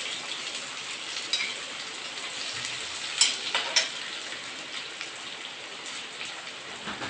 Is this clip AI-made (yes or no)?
no